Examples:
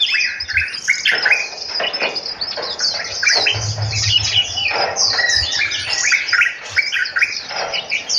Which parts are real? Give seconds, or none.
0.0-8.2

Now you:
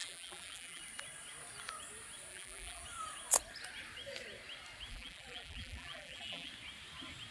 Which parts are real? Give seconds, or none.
0.8-2.3; 2.8-4.9; 6.5-7.3

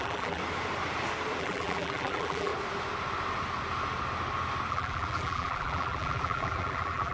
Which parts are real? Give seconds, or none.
0.4-1.4; 2.5-4.7

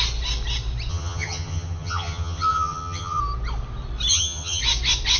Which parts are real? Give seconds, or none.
0.0-0.9; 3.2-4.1; 4.6-5.2

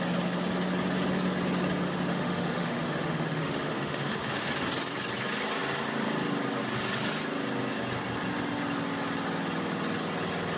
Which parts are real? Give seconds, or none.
0.0-2.1; 4.5-10.6

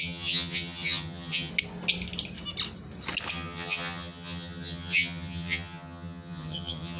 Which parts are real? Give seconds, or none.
1.5-3.3

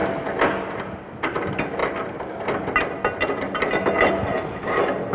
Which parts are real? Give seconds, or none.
0.0-5.1